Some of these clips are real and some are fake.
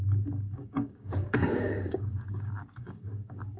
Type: fake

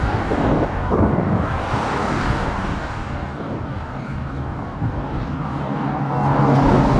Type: fake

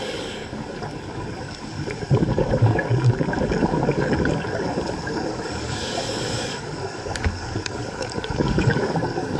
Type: fake